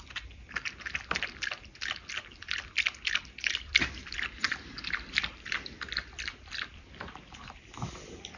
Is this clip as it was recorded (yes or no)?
yes